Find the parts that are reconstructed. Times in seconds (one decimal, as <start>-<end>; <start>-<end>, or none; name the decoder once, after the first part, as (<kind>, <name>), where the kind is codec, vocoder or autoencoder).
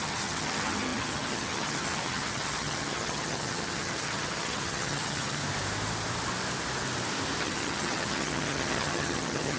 0.0-5.4 (vocoder, HiFi-GAN); 7.4-9.6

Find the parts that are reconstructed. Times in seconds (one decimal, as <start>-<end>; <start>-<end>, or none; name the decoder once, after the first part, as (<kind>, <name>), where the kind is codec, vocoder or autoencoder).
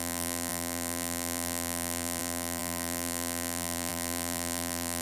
0.0-5.0 (vocoder, BigVGAN v2)